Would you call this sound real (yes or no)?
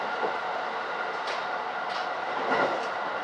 yes